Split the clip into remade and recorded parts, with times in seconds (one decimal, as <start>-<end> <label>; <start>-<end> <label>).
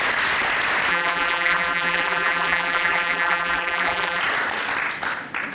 0.0-0.9 recorded; 0.9-4.2 remade; 4.2-5.5 recorded